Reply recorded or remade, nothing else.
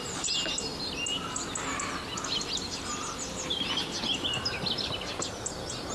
recorded